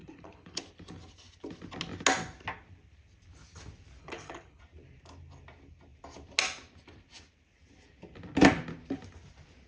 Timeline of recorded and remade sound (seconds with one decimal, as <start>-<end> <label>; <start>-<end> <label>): 0.0-0.6 remade; 0.6-4.0 recorded; 4.0-4.6 remade; 4.6-9.7 recorded